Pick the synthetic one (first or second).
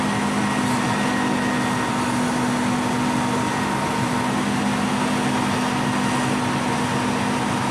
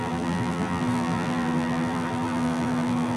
second